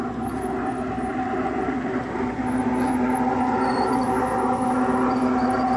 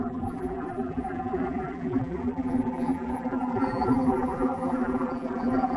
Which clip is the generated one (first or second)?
second